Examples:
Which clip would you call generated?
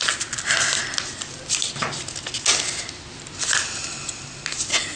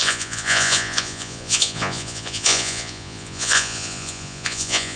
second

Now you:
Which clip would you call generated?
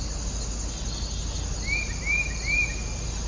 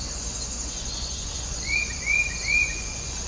second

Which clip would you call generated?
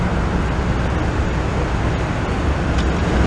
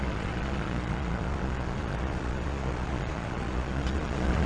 second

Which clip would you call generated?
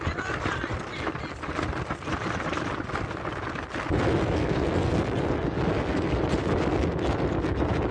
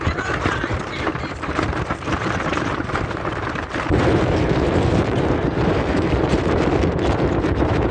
second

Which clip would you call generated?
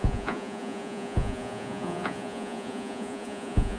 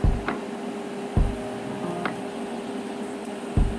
first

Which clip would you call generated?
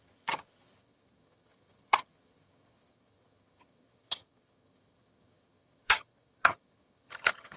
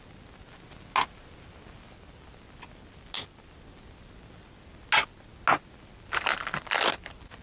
first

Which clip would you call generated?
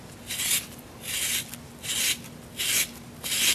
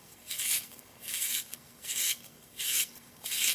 second